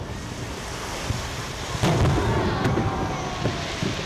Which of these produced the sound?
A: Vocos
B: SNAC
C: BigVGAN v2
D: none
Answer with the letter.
D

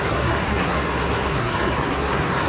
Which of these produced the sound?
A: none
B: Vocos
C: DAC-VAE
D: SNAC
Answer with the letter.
D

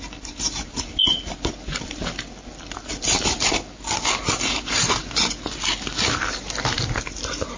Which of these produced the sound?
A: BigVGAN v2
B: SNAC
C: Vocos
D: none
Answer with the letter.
D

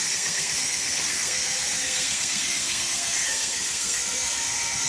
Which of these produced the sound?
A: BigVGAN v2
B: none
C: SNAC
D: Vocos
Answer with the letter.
C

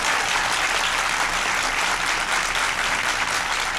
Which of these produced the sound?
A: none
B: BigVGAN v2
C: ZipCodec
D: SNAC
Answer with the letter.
A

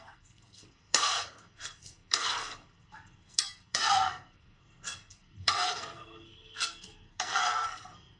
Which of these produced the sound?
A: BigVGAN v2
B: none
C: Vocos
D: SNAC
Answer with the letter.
D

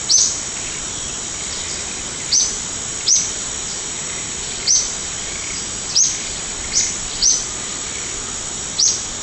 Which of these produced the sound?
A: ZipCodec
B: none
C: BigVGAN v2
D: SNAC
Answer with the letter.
B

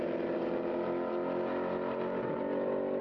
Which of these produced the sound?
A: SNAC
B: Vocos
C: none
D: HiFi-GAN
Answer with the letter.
C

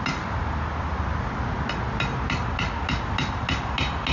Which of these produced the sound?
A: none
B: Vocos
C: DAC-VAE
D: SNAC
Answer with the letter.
A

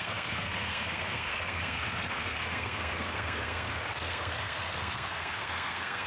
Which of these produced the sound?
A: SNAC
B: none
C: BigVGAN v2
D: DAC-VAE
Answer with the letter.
A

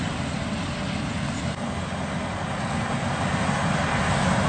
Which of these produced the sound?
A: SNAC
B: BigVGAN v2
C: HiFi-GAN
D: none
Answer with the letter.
D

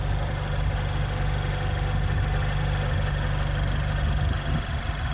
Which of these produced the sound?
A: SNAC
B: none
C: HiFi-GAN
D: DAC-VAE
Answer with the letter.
B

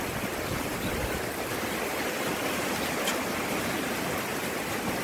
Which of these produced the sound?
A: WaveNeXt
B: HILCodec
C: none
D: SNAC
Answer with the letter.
C